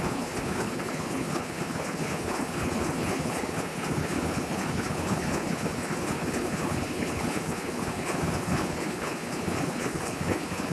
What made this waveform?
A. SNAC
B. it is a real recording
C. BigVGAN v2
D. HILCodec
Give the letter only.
D